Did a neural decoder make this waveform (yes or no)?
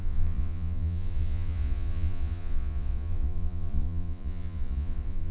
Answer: yes